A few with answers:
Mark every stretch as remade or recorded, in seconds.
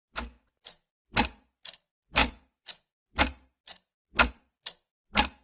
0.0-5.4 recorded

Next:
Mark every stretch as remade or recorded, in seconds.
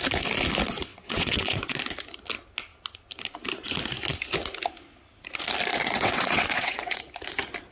0.0-0.9 recorded; 0.9-1.8 remade; 1.8-5.7 recorded; 5.7-7.0 remade; 7.0-7.7 recorded